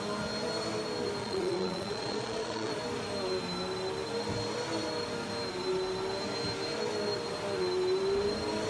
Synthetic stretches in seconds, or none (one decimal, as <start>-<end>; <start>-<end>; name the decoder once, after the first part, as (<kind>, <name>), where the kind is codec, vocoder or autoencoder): 1.2-2.7 (vocoder, Vocos)